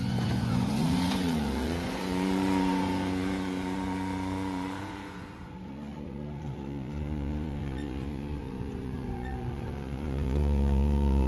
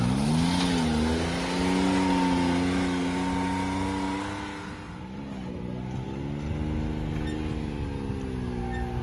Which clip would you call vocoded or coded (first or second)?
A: first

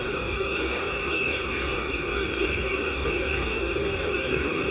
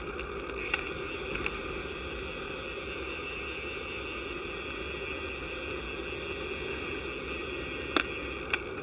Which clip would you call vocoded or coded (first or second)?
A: first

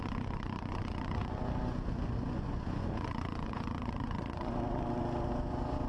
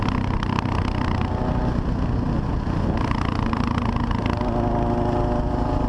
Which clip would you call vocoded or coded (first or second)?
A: first